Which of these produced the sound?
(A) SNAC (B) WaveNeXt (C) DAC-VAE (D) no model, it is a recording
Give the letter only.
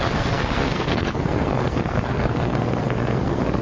A